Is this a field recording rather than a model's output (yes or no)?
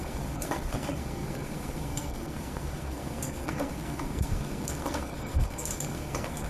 no